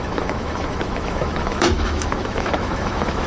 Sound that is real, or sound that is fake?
fake